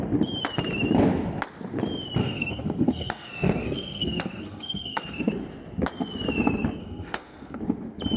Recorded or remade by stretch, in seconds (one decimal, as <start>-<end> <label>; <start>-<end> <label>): 0.0-2.2 recorded; 2.2-5.3 remade; 5.3-6.8 recorded; 6.8-7.6 remade; 7.6-8.2 recorded